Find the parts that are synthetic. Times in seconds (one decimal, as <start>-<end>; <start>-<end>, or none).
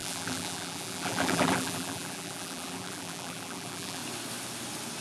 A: 0.0-4.0